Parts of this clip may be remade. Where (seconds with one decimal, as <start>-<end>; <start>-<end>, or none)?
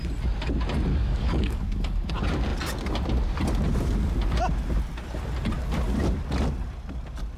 0.9-2.1